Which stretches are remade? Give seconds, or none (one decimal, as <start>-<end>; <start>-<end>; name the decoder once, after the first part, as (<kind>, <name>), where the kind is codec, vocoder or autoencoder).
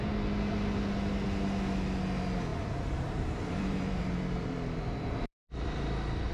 2.5-6.3 (vocoder, BigVGAN v2)